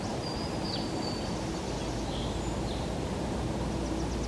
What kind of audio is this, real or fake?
real